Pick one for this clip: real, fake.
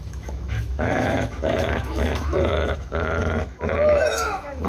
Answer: fake